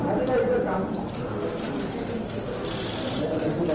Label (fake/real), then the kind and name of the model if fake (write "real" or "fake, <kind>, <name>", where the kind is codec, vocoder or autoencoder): real